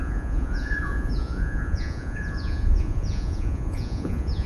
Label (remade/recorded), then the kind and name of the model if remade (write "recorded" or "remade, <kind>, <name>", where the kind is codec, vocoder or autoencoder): remade, vocoder, Vocos